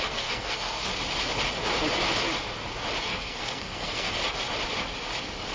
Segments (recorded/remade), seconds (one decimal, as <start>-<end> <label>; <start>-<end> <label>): 0.0-0.9 remade; 0.9-3.0 recorded; 3.0-4.2 remade; 4.2-5.5 recorded